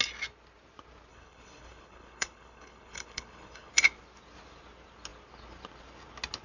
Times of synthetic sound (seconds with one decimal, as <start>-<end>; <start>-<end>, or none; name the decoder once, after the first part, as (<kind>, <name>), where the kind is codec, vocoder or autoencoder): 1.1-3.7 (codec, HILCodec)

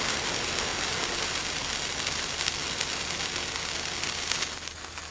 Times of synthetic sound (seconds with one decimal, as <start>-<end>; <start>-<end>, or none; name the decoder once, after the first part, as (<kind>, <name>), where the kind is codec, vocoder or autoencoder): none